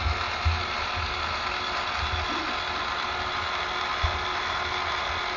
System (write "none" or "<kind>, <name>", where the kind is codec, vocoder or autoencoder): none